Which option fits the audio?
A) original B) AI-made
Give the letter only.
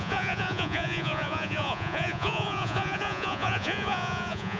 B